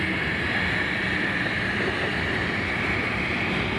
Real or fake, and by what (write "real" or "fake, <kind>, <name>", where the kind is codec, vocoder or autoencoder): real